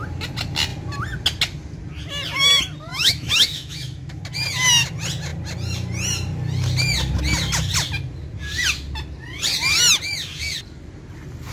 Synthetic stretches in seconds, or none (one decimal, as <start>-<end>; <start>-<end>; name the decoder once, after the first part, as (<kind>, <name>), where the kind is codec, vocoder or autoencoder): 2.9-4.2 (autoencoder, DAC-VAE)